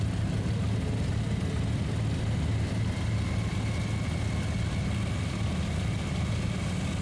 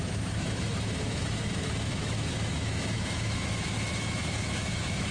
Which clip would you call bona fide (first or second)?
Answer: first